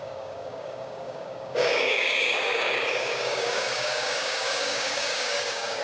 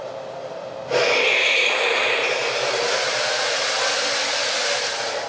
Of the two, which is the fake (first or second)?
first